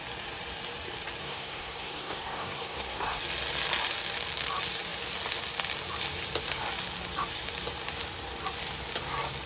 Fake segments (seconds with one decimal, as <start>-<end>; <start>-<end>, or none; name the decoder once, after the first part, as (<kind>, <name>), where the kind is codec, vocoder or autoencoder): 1.2-3.2 (codec, SNAC)